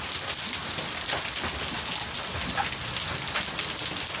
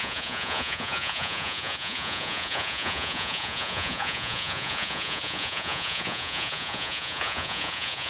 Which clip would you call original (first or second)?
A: first